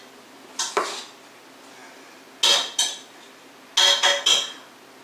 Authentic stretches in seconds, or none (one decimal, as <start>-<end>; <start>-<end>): 0.0-5.0